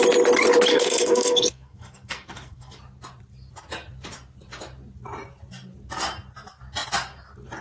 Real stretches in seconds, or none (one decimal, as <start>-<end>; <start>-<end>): 0.0-0.7; 2.8-7.6